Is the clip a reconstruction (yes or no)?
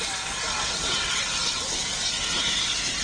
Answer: no